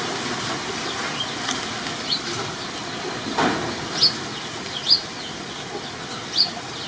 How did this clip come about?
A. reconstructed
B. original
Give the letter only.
B